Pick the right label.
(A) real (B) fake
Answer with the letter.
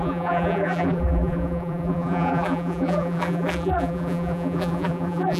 B